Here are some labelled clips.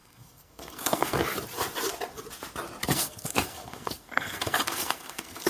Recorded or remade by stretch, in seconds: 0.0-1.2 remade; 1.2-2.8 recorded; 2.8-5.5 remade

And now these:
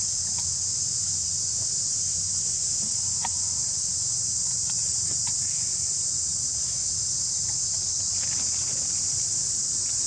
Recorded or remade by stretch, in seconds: 0.0-0.6 recorded; 0.6-3.8 remade; 3.8-6.3 recorded; 6.3-7.8 remade; 7.8-10.1 recorded

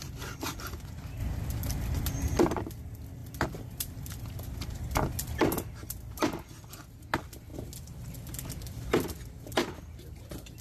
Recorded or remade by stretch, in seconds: 0.0-1.2 recorded; 1.2-2.4 remade; 2.4-3.2 recorded; 3.2-4.2 remade; 4.2-10.6 recorded

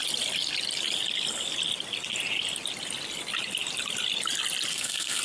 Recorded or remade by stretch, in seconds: 0.0-4.7 recorded; 4.7-5.2 remade

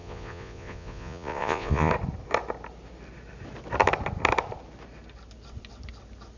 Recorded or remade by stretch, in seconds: 0.0-1.9 remade; 1.9-6.4 recorded

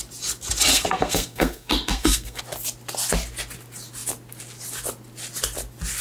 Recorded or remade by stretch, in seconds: 0.0-0.7 recorded; 0.7-2.4 remade; 2.4-6.0 recorded

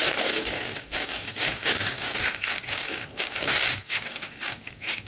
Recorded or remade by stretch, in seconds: 0.0-5.1 remade